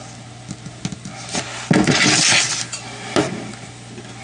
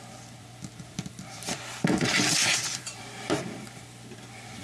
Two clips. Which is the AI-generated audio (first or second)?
second